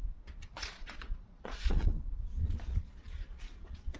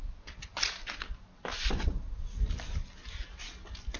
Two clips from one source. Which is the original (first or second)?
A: second